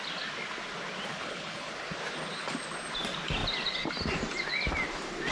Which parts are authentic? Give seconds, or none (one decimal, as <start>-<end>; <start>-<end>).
0.0-1.1; 1.7-5.3